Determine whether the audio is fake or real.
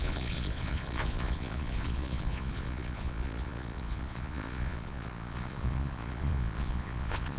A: fake